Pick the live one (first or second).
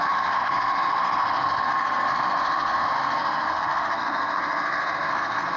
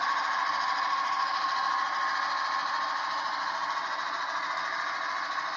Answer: second